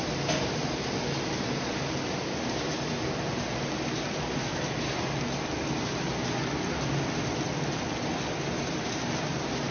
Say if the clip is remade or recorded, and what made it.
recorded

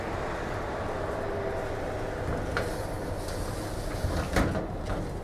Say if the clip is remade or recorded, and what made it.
recorded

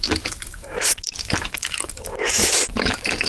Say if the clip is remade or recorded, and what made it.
remade, autoencoder, DAC-VAE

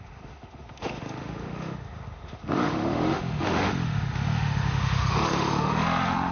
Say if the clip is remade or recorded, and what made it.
remade, autoencoder, DAC-VAE